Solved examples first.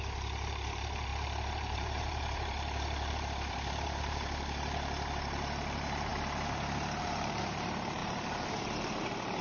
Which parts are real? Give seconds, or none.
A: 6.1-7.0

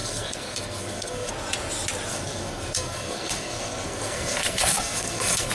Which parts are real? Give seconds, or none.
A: 1.3-2.1

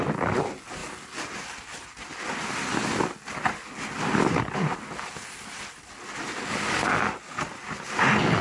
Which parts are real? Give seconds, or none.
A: 0.0-8.4

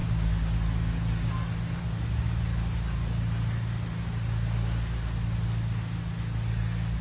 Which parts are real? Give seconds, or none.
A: 0.0-7.0